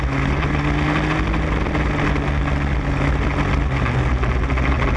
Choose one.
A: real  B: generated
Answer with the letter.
A